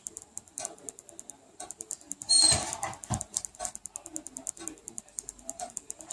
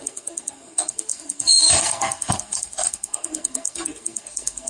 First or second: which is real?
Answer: first